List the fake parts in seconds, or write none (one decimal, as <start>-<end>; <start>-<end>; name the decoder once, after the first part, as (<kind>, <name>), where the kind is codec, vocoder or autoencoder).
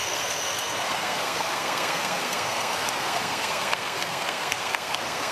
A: 0.0-5.3 (codec, SNAC)